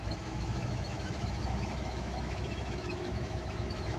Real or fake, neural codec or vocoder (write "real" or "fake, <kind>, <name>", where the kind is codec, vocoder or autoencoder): fake, autoencoder, DAC-VAE